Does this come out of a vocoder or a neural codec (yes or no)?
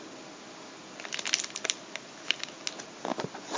no